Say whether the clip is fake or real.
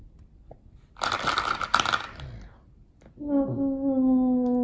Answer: real